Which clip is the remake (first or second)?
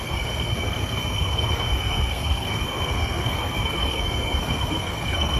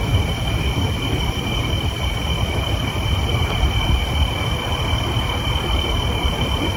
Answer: first